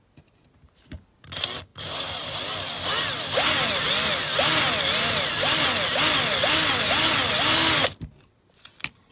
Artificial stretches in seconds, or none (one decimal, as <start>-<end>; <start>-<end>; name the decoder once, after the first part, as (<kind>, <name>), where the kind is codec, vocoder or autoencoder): none